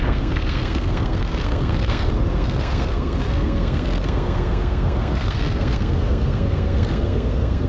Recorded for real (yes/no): no